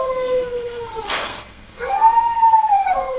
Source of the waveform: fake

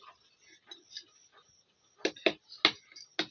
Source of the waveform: real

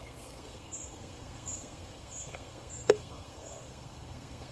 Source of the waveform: fake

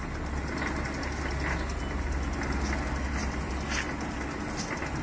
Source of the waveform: real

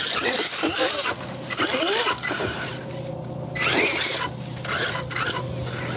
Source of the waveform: real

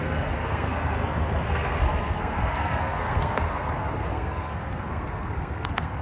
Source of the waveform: fake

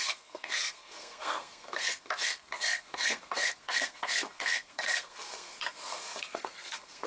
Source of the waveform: fake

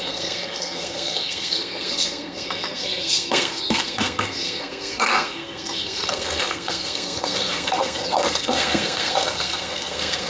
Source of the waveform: fake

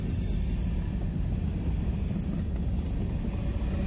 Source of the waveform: real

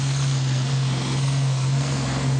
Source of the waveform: fake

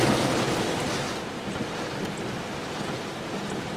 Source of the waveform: real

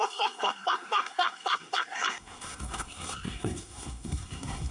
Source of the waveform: fake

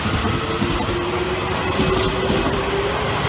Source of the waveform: real